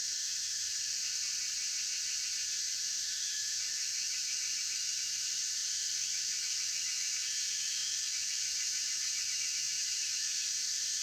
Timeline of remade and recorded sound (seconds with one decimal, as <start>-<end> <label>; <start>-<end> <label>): 0.0-1.2 remade; 1.2-2.6 recorded; 2.6-11.0 remade